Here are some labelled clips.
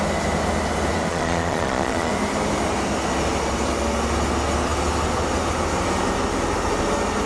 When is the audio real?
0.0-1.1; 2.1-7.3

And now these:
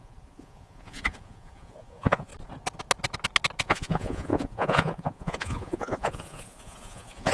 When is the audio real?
2.3-3.6

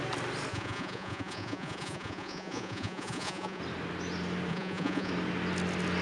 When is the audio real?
0.0-0.5; 3.6-4.5; 5.1-6.0

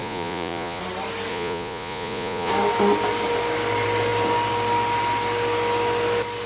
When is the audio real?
0.8-1.3; 2.5-6.5